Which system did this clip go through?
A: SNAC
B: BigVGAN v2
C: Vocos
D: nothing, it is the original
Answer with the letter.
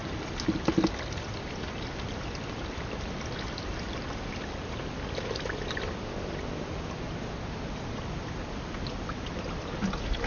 D